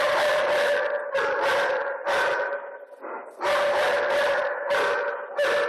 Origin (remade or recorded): recorded